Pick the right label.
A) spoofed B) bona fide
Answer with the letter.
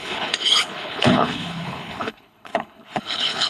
A